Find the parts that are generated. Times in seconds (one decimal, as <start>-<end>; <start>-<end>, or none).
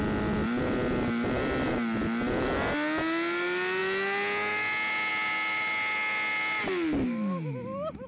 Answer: none